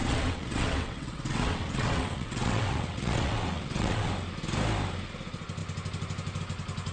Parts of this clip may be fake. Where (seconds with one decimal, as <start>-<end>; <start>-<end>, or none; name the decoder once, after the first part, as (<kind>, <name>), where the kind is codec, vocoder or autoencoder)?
0.0-4.1 (vocoder, WaveNeXt)